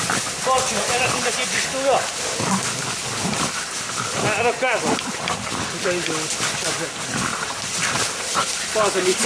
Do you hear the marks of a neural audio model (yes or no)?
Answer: no